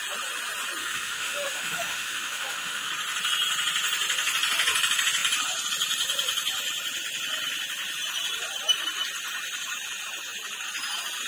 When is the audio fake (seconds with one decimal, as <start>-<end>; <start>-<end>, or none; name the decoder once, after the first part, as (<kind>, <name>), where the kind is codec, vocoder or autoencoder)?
0.8-2.9 (autoencoder, DAC-VAE)